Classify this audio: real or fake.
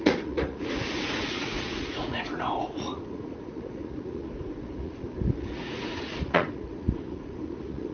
fake